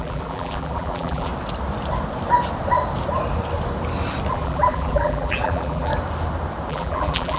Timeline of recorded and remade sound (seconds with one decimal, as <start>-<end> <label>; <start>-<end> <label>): 0.0-1.3 remade; 1.3-4.3 recorded; 4.3-5.9 remade; 5.9-6.7 recorded; 6.7-7.4 remade